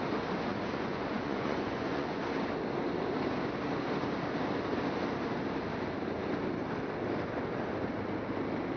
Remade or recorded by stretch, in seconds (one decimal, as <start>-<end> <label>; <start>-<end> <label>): 0.0-0.5 recorded; 0.5-2.2 remade; 2.2-8.8 recorded